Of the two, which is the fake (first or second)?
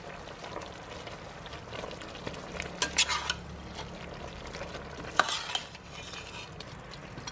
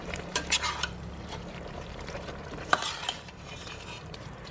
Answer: second